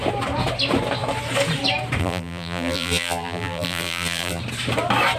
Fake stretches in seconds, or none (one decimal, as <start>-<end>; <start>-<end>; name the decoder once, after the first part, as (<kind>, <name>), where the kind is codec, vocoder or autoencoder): 2.0-4.4 (vocoder, BigVGAN v2)